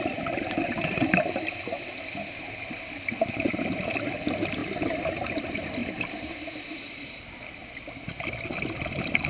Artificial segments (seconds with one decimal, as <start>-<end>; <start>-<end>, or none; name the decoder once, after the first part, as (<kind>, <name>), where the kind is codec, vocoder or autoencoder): 0.0-4.6 (vocoder, BigVGAN v2); 5.3-7.6